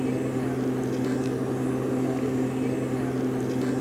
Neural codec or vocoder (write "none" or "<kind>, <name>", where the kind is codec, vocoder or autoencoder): none